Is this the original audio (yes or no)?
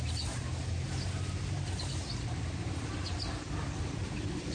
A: yes